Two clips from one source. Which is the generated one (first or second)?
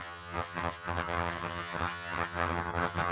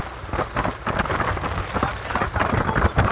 first